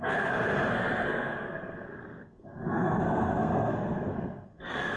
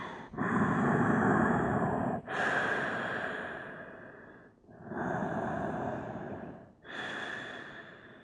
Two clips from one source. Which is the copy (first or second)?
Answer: first